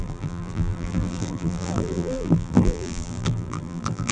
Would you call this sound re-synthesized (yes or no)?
yes